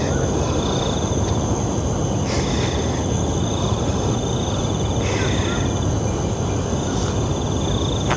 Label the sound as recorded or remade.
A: recorded